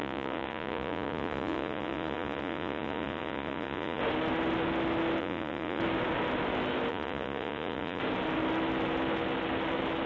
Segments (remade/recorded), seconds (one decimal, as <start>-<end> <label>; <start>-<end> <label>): 0.0-4.0 remade; 4.0-5.2 recorded; 5.2-5.8 remade; 5.8-6.9 recorded; 6.9-8.0 remade; 8.0-10.1 recorded